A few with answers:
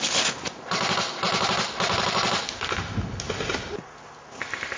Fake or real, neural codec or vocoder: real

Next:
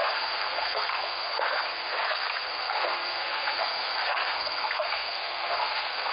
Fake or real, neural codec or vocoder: fake, codec, SNAC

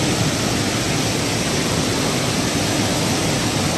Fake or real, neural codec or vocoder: real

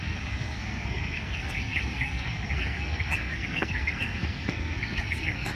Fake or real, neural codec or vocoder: fake, codec, SNAC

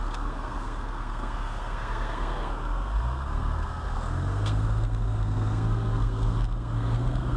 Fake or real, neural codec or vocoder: fake, codec, SNAC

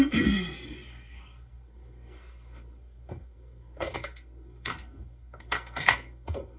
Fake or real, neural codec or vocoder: fake, codec, SNAC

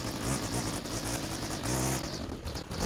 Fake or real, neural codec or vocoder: real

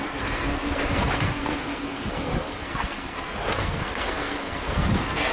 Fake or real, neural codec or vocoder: fake, codec, SNAC